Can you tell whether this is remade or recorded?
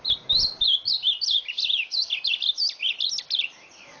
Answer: recorded